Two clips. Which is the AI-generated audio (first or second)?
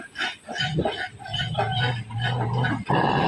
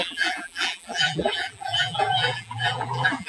second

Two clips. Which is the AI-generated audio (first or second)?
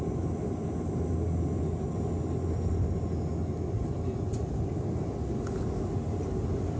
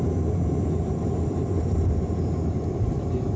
second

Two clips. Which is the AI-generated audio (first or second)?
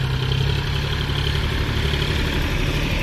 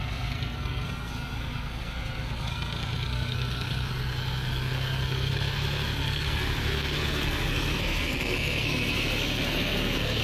second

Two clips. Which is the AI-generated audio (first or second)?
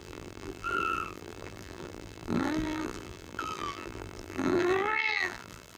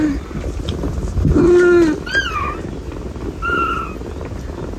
first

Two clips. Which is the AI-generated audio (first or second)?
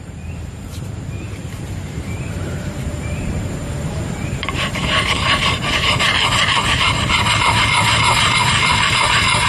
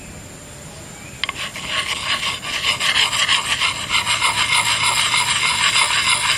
first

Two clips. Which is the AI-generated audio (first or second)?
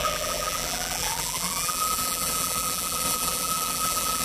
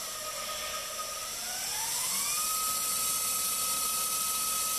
first